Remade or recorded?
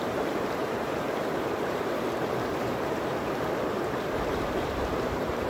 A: remade